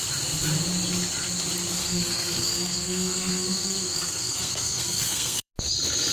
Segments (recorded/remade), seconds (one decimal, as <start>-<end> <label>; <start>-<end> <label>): 0.0-1.8 recorded; 1.8-5.5 remade; 5.5-6.1 recorded